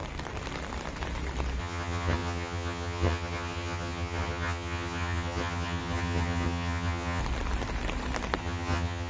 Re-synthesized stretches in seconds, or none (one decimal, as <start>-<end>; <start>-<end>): 1.6-7.2; 8.4-9.1